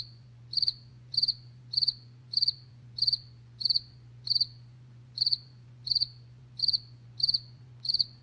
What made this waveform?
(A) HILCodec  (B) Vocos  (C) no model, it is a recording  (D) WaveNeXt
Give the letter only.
B